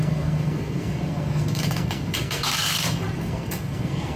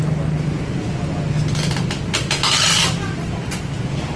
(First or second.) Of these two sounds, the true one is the second